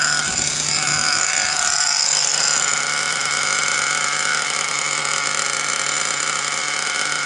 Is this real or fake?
real